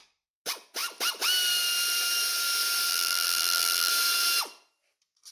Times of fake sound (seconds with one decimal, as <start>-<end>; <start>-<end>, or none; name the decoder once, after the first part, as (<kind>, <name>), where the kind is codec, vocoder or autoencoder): 2.9-3.9 (vocoder, BigVGAN v2)